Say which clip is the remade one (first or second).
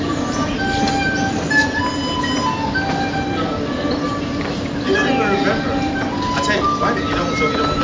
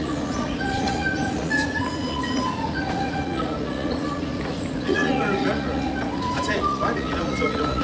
second